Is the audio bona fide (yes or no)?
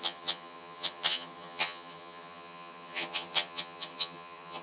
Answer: no